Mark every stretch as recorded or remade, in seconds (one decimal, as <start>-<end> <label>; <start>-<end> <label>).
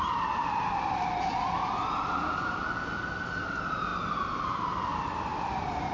0.0-5.9 recorded